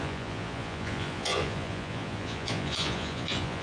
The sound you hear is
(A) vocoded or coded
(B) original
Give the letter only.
A